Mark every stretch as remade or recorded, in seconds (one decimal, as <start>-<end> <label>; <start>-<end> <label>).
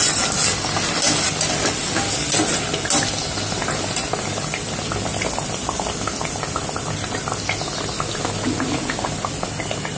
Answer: 0.0-10.0 recorded